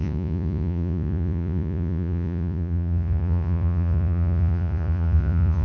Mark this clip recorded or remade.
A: remade